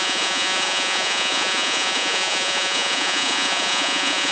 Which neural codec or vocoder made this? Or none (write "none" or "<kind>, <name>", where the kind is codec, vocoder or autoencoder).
vocoder, Vocos